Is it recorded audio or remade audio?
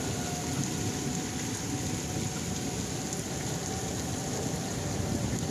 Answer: recorded